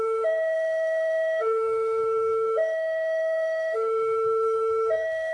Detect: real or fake fake